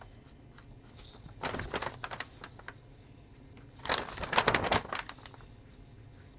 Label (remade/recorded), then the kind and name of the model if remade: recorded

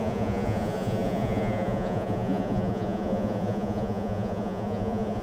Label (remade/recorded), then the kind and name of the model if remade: remade, vocoder, Vocos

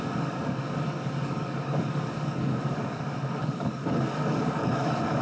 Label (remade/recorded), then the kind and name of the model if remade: remade, codec, DAC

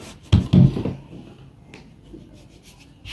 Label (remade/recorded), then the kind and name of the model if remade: recorded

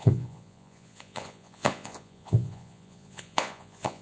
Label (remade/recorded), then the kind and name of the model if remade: remade, vocoder, Vocos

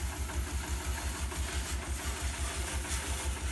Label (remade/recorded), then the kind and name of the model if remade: recorded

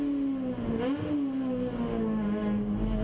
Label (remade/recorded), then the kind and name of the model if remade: recorded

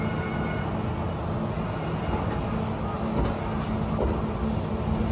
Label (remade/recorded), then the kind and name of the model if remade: recorded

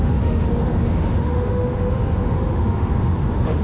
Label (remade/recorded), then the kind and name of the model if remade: remade, autoencoder, DAC-VAE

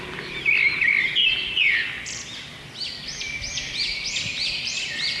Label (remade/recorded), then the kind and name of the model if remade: remade, vocoder, BigVGAN v2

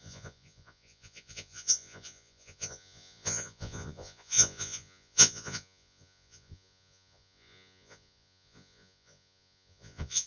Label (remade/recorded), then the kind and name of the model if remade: remade, vocoder, Vocos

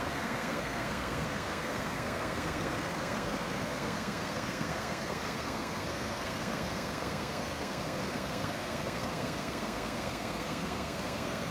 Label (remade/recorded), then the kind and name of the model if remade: remade, codec, SNAC